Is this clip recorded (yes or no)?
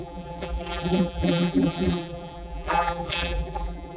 no